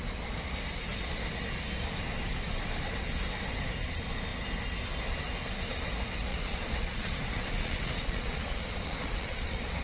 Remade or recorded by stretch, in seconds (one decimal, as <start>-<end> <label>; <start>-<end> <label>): 0.0-6.3 recorded; 6.3-9.8 remade

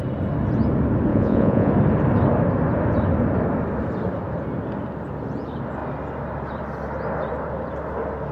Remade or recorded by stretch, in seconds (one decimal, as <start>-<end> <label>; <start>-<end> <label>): 0.0-1.1 recorded; 1.1-1.7 remade; 1.7-8.3 recorded

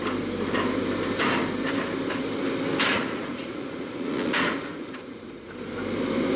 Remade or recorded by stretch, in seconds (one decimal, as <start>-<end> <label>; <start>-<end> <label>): 0.0-2.9 recorded; 2.9-5.5 remade; 5.5-6.4 recorded

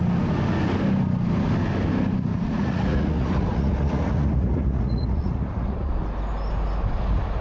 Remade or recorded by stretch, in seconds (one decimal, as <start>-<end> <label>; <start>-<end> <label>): 0.0-2.3 recorded; 2.3-5.9 remade; 5.9-7.4 recorded

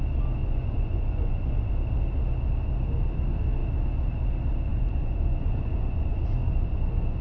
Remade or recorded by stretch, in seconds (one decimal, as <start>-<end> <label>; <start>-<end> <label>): 0.0-0.4 recorded; 0.4-1.7 remade; 1.7-4.7 recorded; 4.7-7.2 remade

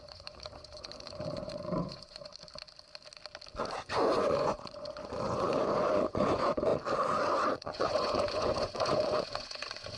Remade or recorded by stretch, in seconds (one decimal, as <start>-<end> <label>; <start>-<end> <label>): 0.0-2.3 remade; 2.3-3.8 recorded; 3.8-6.7 remade; 6.7-7.5 recorded; 7.5-10.0 remade